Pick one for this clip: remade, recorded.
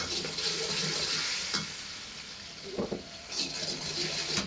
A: recorded